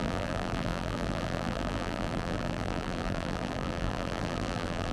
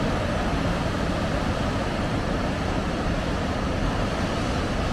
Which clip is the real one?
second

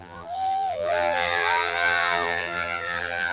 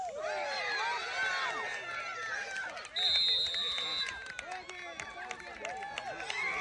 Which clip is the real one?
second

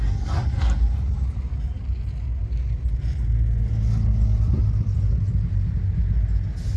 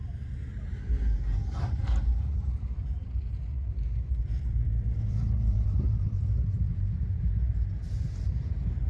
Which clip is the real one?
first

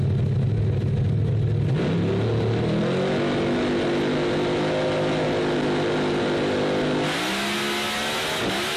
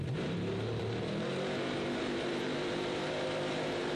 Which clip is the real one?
first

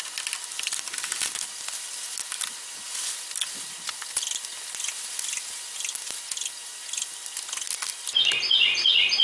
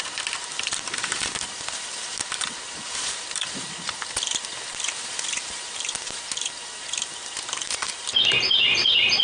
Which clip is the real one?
first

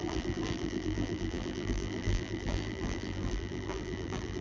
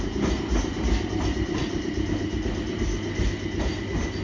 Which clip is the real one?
second